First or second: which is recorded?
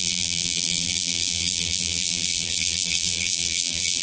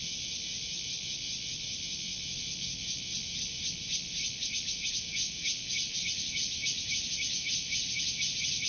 second